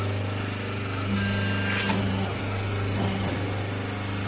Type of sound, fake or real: real